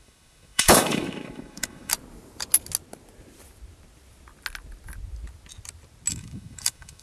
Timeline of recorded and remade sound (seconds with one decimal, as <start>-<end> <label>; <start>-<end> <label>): 0.0-1.9 remade; 1.9-6.1 recorded; 6.1-7.0 remade